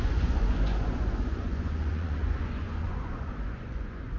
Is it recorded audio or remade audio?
remade